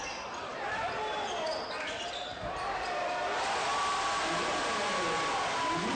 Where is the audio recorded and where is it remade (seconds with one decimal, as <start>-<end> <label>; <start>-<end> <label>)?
0.0-6.0 recorded